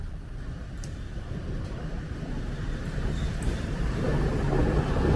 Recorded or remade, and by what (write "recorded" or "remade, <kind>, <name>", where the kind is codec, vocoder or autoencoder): remade, vocoder, BigVGAN v2